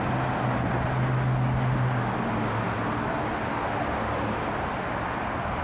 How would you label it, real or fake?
real